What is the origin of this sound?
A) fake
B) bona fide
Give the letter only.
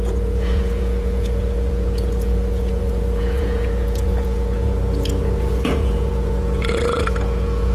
A